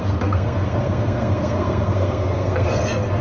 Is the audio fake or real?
fake